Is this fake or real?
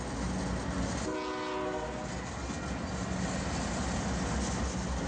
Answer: real